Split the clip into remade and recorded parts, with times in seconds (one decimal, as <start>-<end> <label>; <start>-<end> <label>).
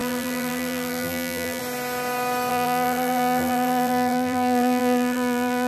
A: 0.0-1.6 remade; 1.6-2.5 recorded; 2.5-5.7 remade